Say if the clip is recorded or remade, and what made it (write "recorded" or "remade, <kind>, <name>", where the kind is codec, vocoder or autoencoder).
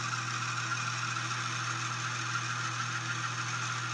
recorded